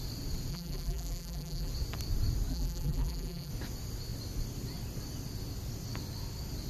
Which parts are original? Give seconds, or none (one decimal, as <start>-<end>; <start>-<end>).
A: 0.0-0.5; 1.7-2.5; 3.5-6.7